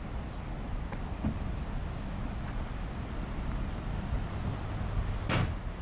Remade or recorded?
recorded